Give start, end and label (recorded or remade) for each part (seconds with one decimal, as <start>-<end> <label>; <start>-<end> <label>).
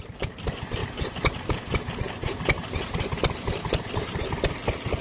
0.0-5.0 recorded